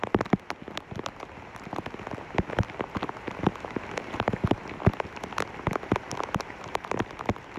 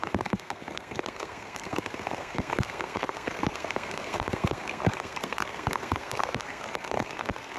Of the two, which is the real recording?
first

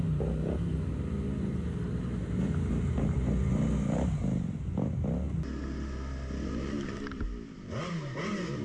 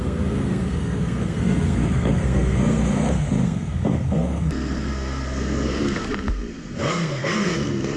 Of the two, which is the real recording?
first